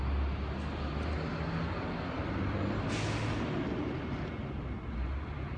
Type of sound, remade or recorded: recorded